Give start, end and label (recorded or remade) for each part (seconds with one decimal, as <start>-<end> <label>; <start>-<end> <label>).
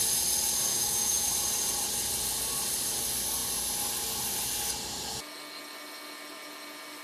0.0-0.7 recorded; 0.7-1.3 remade; 1.3-7.0 recorded